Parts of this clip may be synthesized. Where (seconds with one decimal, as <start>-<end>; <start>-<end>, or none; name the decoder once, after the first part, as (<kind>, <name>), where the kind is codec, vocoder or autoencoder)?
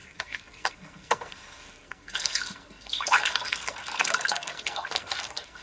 0.0-5.6 (codec, SNAC)